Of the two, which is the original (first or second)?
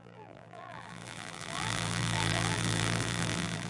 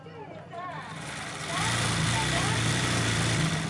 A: second